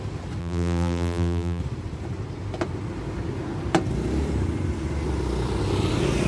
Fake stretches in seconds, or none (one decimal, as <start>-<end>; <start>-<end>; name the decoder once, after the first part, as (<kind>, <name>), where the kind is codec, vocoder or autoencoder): 0.4-1.6 (vocoder, BigVGAN v2)